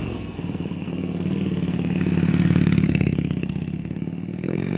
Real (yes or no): no